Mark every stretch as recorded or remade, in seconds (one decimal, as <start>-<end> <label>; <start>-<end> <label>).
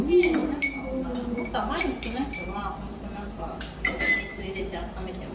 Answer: 0.0-0.4 recorded; 0.4-3.6 remade; 3.6-4.3 recorded; 4.3-5.3 remade